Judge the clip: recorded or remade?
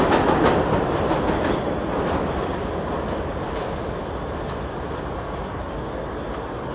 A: recorded